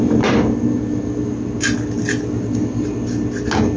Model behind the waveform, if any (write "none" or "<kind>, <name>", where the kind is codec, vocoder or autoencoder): none